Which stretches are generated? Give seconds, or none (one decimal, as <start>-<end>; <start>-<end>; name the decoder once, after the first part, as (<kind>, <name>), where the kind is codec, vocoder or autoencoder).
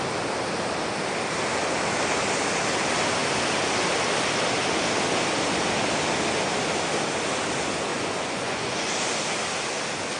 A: 7.9-8.9 (vocoder, Vocos)